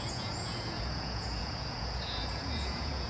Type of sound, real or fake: fake